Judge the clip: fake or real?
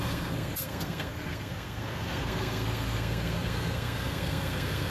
fake